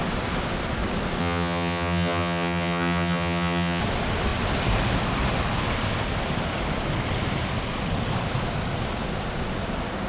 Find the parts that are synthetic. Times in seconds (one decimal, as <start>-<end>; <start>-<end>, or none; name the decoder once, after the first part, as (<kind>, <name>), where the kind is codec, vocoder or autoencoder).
1.2-3.8 (vocoder, HiFi-GAN)